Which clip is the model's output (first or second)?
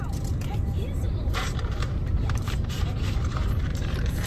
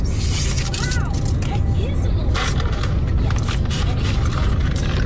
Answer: first